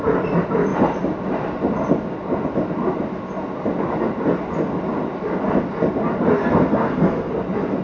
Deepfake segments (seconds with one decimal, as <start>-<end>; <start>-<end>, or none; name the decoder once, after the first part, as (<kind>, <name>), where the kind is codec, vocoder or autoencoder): 6.4-7.3 (codec, SNAC)